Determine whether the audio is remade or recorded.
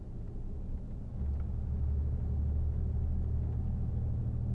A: recorded